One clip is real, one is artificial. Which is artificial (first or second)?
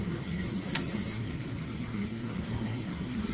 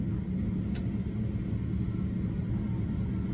first